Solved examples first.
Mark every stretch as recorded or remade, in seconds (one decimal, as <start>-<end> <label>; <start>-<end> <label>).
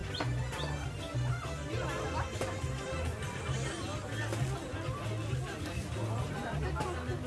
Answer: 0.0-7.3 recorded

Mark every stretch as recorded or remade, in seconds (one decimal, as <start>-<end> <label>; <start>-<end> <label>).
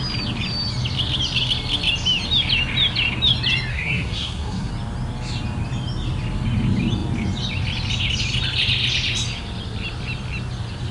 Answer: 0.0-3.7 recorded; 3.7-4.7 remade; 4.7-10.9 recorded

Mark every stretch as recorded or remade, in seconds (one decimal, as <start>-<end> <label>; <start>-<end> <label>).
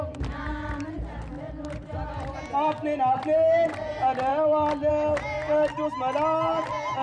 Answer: 0.0-7.0 recorded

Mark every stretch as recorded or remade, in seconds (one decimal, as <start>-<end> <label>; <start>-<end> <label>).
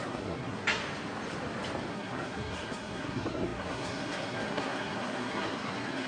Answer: 0.0-0.8 remade; 0.8-1.9 recorded; 1.9-6.1 remade